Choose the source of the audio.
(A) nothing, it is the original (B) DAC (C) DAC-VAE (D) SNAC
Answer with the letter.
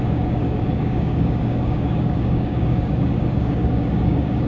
B